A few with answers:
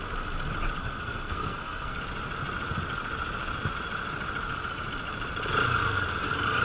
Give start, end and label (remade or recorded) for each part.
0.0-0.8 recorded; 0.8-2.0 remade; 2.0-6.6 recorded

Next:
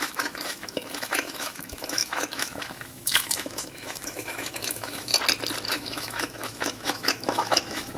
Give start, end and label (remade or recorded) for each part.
0.0-5.1 remade; 5.1-5.7 recorded; 5.7-8.0 remade

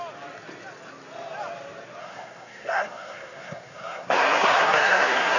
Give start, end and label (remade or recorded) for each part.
0.0-2.0 recorded; 2.0-5.4 remade

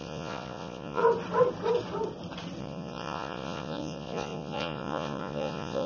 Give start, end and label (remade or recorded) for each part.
0.0-1.0 remade; 1.0-2.6 recorded; 2.6-5.9 remade

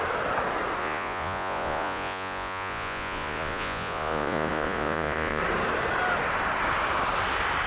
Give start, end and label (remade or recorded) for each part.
0.0-0.8 recorded; 0.8-5.4 remade; 5.4-7.7 recorded